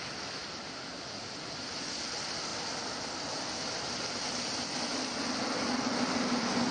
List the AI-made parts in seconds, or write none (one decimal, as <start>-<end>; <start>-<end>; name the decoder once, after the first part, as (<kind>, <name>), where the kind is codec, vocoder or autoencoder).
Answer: none